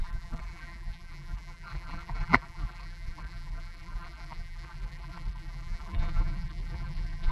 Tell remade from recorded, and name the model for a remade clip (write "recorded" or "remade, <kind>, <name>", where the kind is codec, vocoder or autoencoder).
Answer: remade, vocoder, BigVGAN v2